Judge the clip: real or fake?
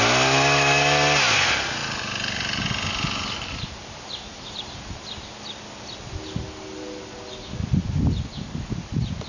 real